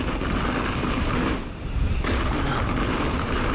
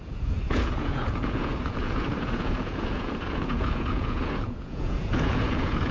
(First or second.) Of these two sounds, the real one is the first